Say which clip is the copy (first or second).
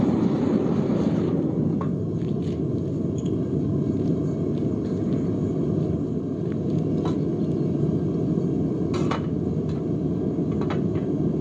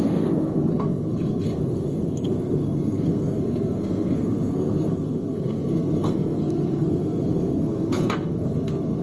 second